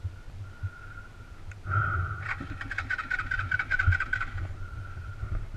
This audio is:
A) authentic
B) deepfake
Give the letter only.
A